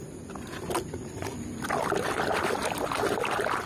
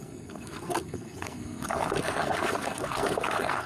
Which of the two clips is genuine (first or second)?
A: first